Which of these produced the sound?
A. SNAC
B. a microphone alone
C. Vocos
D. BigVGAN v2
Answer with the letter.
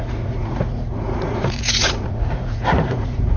C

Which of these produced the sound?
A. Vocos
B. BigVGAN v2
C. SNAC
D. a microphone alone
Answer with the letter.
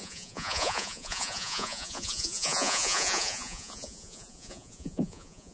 A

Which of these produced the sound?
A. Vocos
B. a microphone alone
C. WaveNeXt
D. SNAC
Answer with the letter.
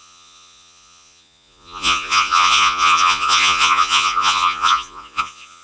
A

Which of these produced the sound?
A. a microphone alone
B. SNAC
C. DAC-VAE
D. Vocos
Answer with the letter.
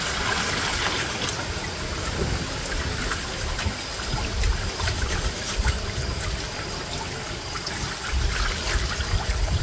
A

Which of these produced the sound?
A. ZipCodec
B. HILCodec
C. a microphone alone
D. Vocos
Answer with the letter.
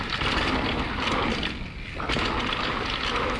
C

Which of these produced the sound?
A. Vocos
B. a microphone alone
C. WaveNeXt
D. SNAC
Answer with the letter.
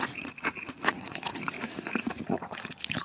A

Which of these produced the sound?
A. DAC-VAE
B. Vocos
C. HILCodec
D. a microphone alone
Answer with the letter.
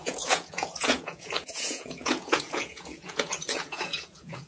B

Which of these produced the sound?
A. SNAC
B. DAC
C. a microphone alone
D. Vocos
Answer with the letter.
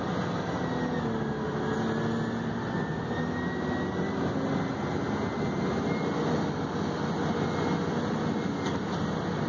C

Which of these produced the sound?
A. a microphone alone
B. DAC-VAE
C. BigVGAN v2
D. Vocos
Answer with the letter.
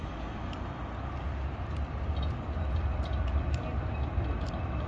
A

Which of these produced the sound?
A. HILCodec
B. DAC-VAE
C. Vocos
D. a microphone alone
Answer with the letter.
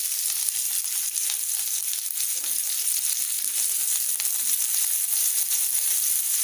D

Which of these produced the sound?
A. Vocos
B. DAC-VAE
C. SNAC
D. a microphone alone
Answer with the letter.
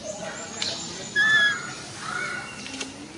D